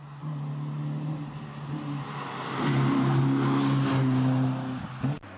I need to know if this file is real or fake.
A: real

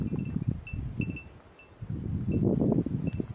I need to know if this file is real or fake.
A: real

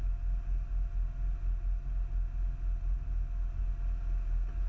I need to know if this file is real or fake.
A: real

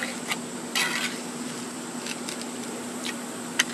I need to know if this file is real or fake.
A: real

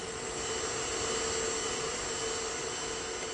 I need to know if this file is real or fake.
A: real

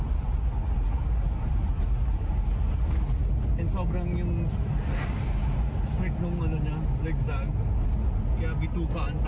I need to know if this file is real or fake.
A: real